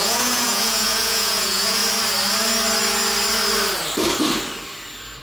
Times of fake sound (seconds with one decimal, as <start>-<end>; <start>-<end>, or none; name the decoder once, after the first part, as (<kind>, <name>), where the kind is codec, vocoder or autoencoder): 0.0-1.8 (vocoder, Vocos)